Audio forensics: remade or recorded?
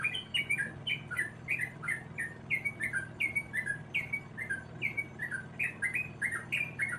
recorded